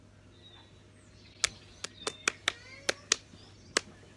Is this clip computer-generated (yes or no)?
no